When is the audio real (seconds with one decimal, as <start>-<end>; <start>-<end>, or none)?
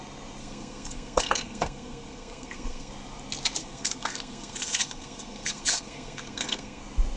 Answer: 0.0-0.4; 2.9-3.6; 6.8-7.2